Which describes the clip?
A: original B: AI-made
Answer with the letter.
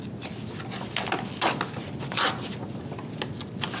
A